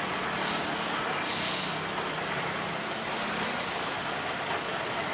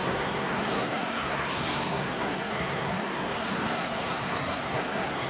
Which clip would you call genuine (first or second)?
first